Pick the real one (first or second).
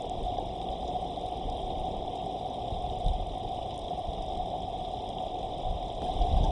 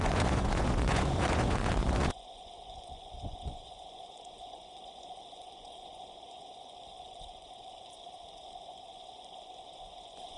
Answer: first